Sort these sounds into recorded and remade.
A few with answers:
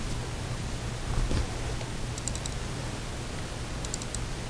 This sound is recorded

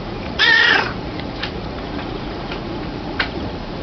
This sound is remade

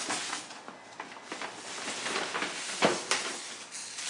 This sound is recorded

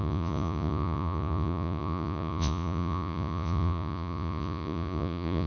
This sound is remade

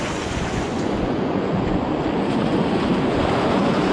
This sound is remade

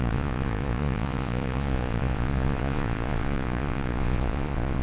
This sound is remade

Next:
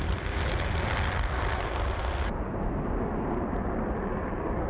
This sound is recorded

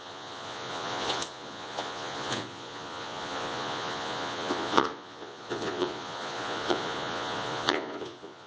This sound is remade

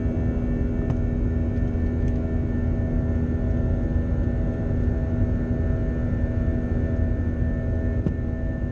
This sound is recorded